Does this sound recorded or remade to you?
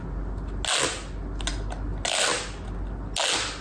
recorded